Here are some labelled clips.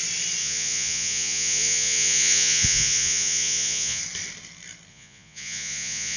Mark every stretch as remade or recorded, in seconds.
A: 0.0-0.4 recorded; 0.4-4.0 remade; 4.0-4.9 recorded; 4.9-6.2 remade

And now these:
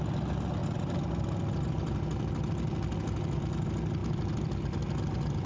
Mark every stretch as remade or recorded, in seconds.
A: 0.0-5.5 recorded

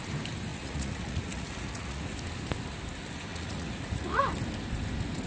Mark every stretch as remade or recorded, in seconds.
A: 0.0-0.5 recorded; 0.5-2.0 remade; 2.0-3.3 recorded; 3.3-4.2 remade; 4.2-5.3 recorded

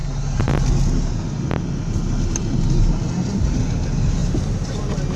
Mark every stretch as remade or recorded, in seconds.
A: 0.0-5.2 recorded

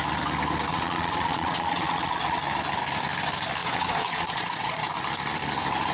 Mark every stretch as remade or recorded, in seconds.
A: 0.0-0.7 recorded; 0.7-2.4 remade; 2.4-3.6 recorded; 3.6-4.9 remade; 4.9-5.9 recorded

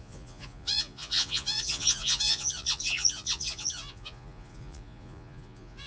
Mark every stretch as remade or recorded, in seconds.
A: 0.0-5.9 remade